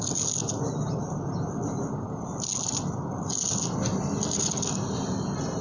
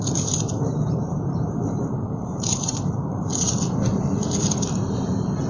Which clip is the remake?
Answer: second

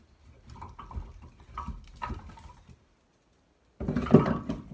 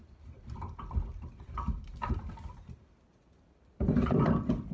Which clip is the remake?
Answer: second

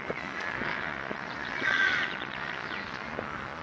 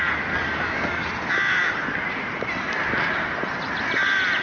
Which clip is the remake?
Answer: first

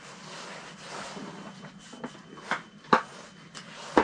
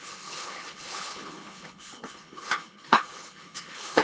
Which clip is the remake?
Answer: second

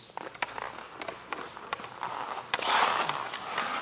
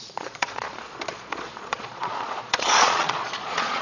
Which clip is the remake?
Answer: second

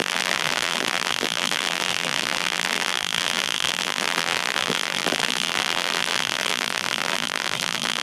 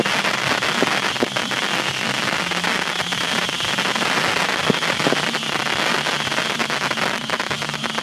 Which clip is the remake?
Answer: first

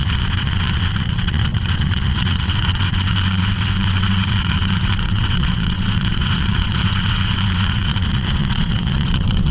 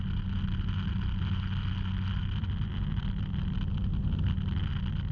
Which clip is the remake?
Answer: first